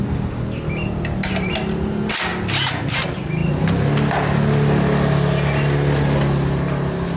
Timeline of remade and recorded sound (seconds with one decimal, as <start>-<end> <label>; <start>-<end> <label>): 0.0-7.2 recorded